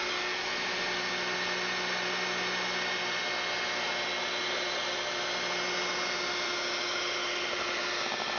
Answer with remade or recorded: recorded